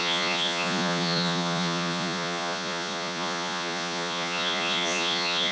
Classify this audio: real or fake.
fake